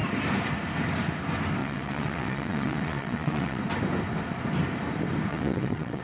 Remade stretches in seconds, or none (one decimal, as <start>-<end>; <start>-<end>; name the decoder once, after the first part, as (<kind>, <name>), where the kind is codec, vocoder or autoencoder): 1.6-3.6 (vocoder, WaveNeXt); 5.3-6.0